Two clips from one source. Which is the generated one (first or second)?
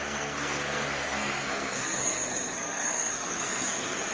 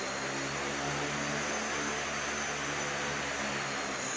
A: first